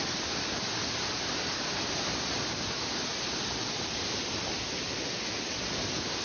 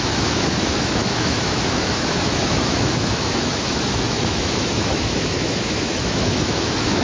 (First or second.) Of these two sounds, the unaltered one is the first